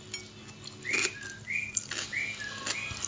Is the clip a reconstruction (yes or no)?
no